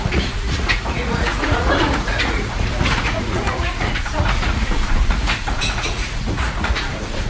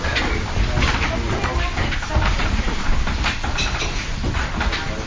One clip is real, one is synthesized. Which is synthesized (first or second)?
first